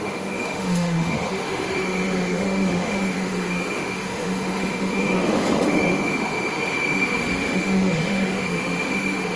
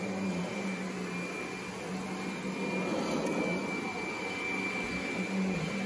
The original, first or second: second